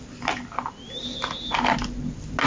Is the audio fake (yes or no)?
no